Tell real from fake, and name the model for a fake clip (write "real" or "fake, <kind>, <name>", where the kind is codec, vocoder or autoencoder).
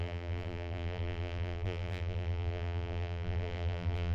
fake, vocoder, BigVGAN v2